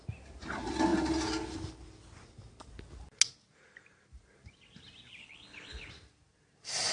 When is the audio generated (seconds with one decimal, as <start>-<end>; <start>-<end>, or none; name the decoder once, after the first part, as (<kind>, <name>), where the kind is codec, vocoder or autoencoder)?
5.2-5.9 (codec, HILCodec)